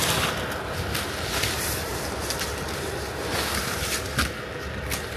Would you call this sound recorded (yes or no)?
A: yes